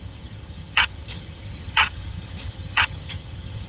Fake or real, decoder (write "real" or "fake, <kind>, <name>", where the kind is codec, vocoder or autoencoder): fake, vocoder, HiFi-GAN